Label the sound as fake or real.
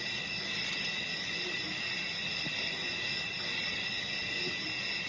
real